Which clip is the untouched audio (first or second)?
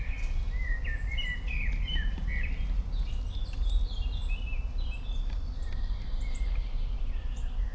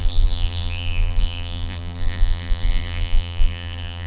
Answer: first